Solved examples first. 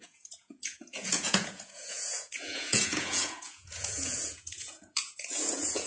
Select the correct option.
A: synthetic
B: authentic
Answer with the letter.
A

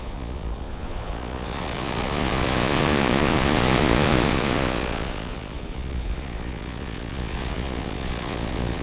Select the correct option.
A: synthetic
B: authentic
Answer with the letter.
A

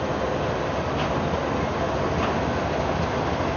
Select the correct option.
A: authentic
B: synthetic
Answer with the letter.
A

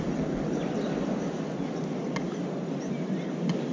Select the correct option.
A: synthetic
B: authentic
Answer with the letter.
B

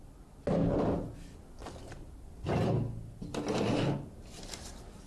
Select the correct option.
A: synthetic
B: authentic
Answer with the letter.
B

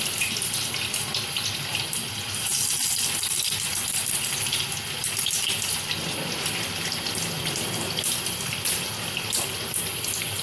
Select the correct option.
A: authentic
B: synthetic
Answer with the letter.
A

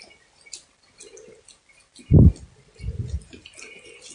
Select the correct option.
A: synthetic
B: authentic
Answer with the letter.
B